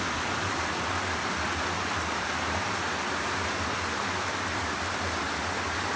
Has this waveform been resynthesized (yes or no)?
no